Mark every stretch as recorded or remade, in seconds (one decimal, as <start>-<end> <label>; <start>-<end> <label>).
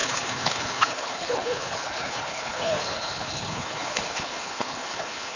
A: 0.0-5.4 remade